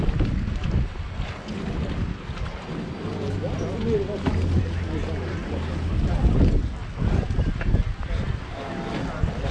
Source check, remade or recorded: recorded